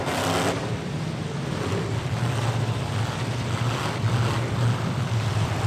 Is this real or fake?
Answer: fake